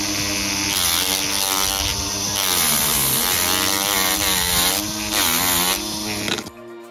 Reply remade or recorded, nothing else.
recorded